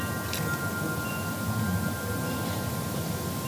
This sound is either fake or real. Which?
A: real